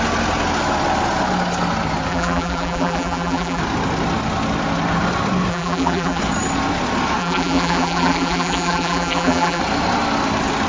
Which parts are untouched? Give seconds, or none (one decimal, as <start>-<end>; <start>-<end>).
0.0-2.1; 3.6-5.5; 6.2-7.2; 9.6-10.7